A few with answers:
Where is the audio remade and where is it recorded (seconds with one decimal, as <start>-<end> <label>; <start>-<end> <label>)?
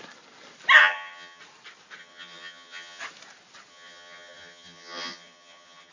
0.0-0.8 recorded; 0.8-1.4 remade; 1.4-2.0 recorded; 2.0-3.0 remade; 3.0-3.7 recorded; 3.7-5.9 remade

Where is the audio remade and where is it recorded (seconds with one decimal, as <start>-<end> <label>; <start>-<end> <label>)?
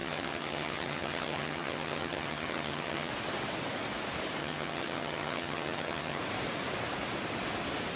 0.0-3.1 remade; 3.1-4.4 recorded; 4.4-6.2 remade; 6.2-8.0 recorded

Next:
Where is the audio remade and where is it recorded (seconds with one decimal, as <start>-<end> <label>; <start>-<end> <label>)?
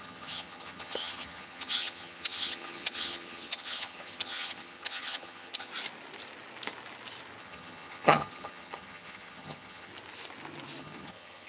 0.0-5.7 remade; 5.7-7.4 recorded; 7.4-9.9 remade; 9.9-10.8 recorded; 10.8-11.5 remade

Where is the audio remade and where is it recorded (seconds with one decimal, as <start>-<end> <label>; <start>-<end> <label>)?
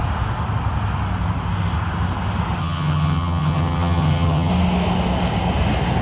0.0-2.6 recorded; 2.6-4.5 remade; 4.5-6.0 recorded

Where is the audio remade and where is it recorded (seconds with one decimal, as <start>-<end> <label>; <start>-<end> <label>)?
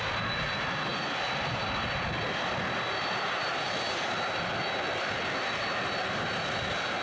0.0-7.0 recorded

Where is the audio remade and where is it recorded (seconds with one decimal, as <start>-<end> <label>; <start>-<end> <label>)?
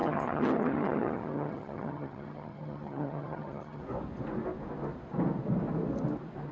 0.0-3.8 remade; 3.8-6.5 recorded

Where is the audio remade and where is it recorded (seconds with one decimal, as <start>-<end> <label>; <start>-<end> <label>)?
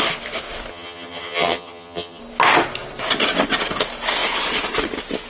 0.0-0.7 recorded; 0.7-2.2 remade; 2.2-5.3 recorded